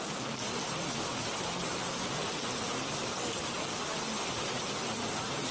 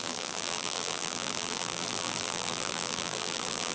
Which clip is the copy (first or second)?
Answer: second